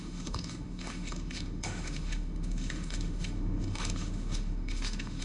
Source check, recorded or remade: remade